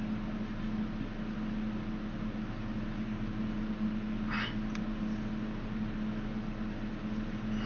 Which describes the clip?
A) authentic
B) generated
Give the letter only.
A